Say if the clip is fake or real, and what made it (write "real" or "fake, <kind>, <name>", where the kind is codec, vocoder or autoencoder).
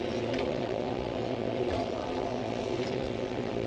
fake, vocoder, WaveNeXt